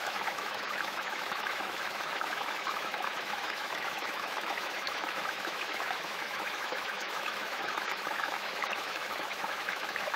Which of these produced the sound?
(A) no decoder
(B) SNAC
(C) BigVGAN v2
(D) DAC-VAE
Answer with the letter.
D